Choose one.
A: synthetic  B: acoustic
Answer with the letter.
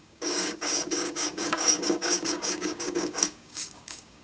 A